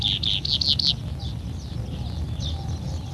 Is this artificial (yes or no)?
no